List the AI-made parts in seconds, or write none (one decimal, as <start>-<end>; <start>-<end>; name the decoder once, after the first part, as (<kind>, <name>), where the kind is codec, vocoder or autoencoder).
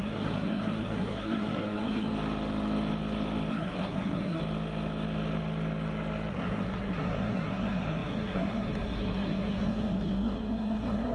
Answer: 0.0-2.1 (codec, SNAC); 3.5-4.4; 6.3-11.1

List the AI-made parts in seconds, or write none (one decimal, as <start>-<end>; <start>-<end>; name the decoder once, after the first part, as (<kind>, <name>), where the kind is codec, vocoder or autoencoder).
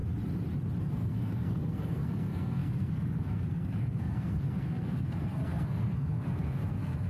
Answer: 0.8-7.1 (codec, SNAC)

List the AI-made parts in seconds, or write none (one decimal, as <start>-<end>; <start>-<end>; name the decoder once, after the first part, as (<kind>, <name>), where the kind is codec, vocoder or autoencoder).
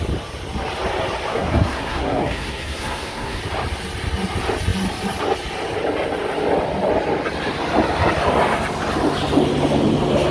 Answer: 1.3-3.4 (codec, SNAC)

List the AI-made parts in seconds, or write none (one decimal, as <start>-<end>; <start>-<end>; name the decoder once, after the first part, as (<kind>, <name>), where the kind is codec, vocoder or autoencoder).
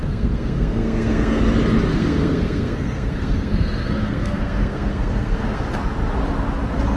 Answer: 0.0-1.4 (codec, SNAC); 1.9-5.6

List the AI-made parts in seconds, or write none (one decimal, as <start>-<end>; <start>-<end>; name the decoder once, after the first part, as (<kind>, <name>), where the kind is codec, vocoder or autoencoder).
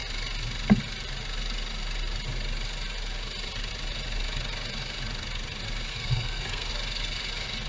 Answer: 5.9-6.7 (codec, SNAC)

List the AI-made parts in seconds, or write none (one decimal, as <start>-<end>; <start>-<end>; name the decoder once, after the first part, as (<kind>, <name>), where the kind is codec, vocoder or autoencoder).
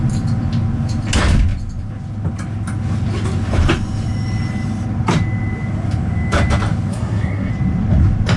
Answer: 6.9-7.5 (codec, SNAC)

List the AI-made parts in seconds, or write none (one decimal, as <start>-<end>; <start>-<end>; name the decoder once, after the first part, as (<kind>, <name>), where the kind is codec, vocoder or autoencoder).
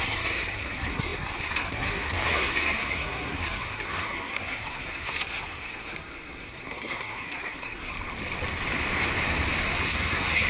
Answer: 0.0-7.9 (codec, SNAC); 9.9-10.5